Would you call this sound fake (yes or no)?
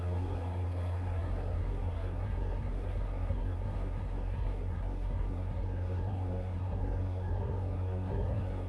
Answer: yes